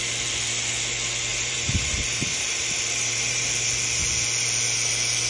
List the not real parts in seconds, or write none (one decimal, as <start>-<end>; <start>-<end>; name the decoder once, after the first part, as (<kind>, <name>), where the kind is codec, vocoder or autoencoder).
1.3-3.5 (vocoder, BigVGAN v2)